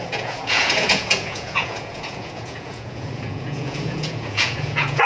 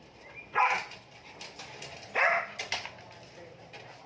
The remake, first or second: first